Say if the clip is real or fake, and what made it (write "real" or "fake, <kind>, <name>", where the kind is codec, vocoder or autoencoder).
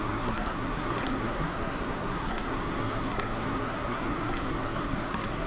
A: fake, codec, SNAC